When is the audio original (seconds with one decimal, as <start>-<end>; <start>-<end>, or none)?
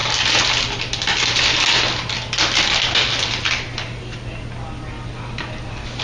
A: 0.0-6.0